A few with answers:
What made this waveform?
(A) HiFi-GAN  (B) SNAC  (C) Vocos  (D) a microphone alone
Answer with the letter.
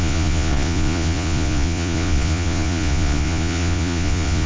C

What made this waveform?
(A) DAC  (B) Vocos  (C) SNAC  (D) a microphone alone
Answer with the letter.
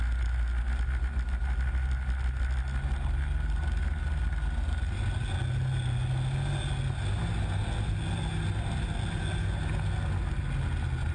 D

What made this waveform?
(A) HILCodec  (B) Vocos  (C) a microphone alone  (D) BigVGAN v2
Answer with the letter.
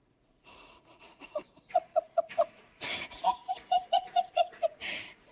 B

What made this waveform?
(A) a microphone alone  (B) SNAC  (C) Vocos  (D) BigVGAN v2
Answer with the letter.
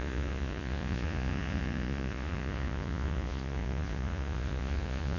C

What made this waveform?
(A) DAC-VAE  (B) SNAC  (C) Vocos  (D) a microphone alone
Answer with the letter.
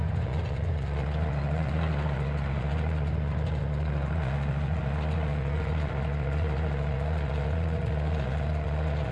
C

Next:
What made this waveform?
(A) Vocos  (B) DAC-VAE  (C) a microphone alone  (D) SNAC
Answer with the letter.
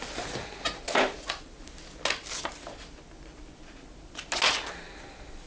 C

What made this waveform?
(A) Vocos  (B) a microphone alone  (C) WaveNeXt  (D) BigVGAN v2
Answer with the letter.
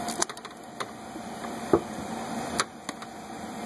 B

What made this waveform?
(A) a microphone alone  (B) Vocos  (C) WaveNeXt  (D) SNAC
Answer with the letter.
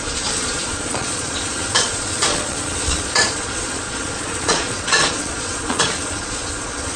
B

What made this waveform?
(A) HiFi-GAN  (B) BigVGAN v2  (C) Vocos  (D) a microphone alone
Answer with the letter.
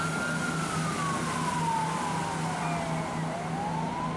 D